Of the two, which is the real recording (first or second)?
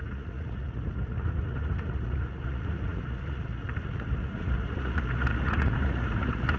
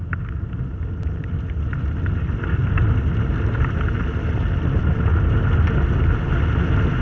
second